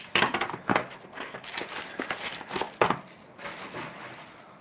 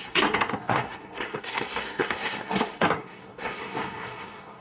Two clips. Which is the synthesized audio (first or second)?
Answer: second